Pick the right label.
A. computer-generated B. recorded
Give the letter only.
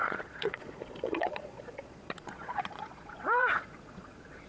A